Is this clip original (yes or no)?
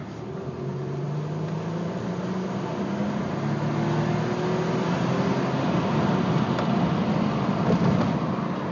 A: yes